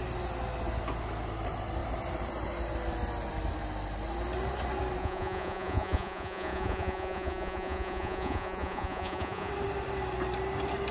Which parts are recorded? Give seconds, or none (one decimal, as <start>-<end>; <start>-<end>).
0.0-5.0; 9.5-10.9